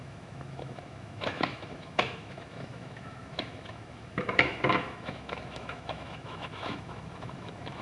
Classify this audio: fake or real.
fake